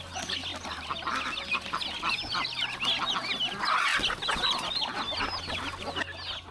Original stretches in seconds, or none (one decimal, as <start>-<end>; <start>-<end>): 0.0-6.5